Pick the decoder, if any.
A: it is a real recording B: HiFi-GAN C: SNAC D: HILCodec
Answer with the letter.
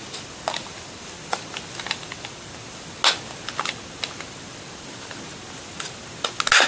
A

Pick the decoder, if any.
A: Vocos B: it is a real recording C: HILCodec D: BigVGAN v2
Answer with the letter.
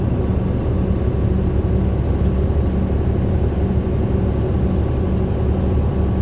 B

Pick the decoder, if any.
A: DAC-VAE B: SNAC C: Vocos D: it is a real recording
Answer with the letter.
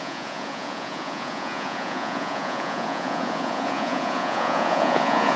C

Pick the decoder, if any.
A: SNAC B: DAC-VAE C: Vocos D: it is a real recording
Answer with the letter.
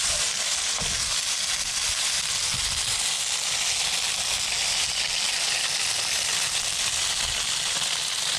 D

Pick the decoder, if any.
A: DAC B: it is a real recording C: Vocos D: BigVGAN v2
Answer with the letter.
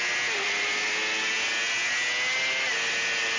B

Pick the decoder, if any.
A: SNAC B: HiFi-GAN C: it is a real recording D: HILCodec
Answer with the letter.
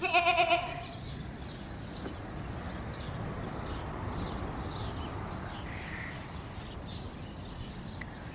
C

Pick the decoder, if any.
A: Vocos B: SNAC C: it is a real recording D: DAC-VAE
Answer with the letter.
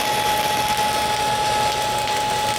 C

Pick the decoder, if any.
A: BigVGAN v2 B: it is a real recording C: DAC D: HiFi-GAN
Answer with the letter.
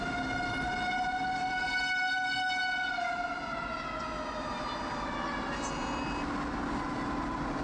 B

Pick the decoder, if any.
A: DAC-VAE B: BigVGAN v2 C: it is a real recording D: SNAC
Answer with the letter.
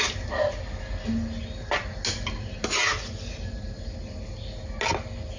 C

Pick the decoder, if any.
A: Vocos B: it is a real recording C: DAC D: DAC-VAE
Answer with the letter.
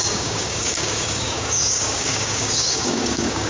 C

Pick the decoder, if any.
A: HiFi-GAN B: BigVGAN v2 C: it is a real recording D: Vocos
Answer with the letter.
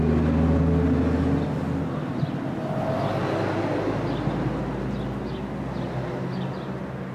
C